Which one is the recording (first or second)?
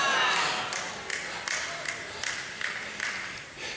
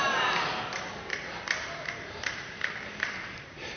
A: first